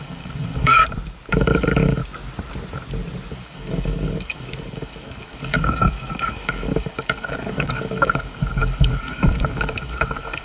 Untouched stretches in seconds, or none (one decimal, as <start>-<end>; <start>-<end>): 0.8-1.3; 2.0-3.3